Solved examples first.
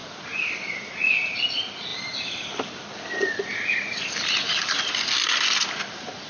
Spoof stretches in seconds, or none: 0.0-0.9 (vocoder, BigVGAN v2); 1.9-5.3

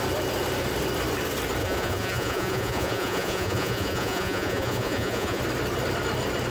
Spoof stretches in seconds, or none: 1.6-5.4 (vocoder, Vocos)

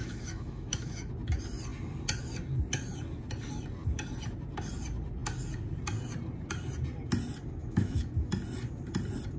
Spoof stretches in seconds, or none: 0.0-1.1 (autoencoder, DAC-VAE); 7.6-8.3

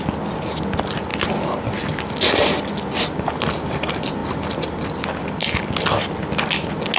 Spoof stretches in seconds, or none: none